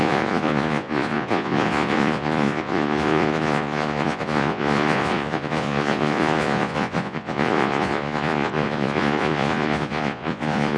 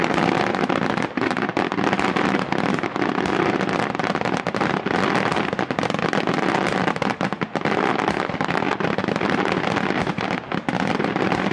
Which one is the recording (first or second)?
second